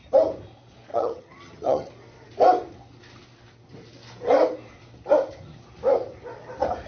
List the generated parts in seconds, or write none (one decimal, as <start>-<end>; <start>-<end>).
0.9-1.9